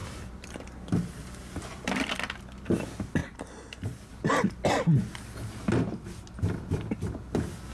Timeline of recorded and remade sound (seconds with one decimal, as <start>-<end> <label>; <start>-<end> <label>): 0.0-2.7 remade; 2.7-3.2 recorded; 3.2-4.1 remade; 4.1-7.7 recorded